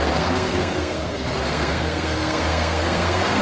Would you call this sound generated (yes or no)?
yes